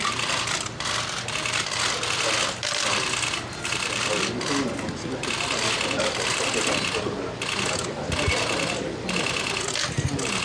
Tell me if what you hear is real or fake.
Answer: real